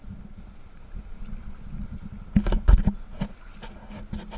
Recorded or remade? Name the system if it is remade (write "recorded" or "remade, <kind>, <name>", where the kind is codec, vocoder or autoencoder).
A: recorded